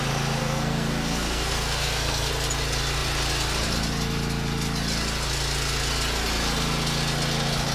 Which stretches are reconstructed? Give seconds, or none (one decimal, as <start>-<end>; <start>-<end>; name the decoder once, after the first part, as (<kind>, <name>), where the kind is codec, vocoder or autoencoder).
0.4-2.3 (codec, SNAC)